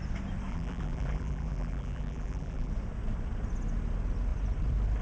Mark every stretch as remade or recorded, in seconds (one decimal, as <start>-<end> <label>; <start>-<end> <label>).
0.0-0.5 recorded; 0.5-2.7 remade; 2.7-5.0 recorded